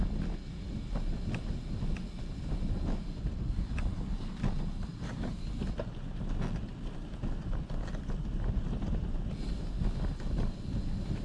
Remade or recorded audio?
recorded